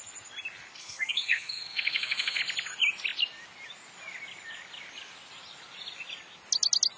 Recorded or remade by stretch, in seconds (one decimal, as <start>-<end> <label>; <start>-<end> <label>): 0.0-0.8 recorded; 0.8-2.4 remade; 2.4-7.0 recorded